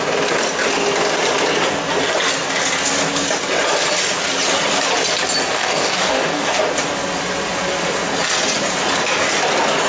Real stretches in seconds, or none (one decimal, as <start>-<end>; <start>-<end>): 0.0-5.5; 6.6-9.9